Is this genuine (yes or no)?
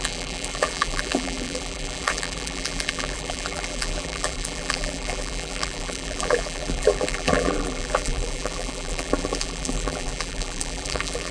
no